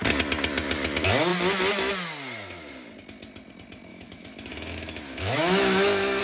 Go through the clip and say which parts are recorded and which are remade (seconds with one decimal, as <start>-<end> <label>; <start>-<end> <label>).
0.0-3.9 recorded; 3.9-6.2 remade